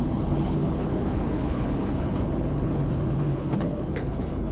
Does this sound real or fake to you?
fake